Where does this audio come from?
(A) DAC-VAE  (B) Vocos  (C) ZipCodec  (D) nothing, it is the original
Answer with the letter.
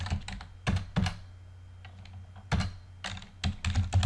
D